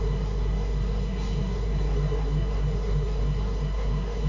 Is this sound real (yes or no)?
no